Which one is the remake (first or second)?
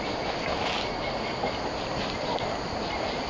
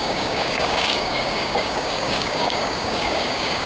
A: second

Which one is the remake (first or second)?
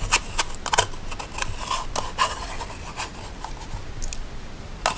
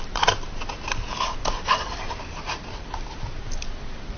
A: second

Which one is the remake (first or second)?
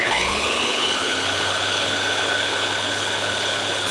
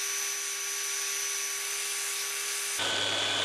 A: first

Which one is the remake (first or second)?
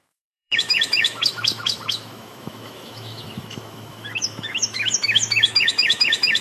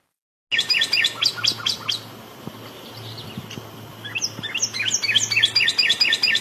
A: first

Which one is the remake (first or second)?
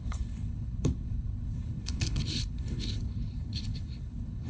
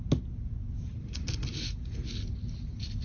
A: first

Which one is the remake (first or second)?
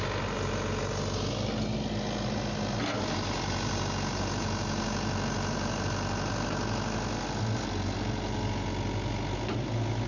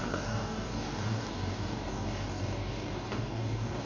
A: second